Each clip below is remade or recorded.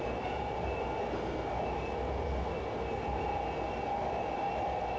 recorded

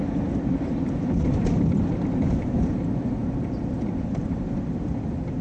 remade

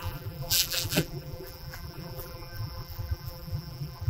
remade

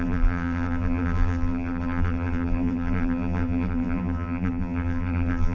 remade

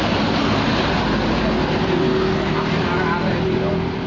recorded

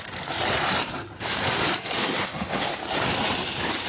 remade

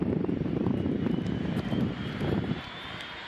remade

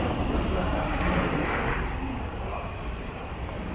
remade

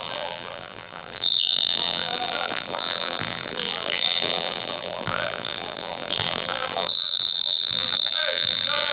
remade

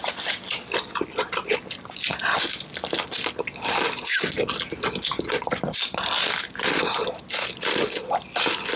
recorded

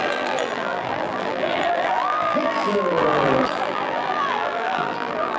remade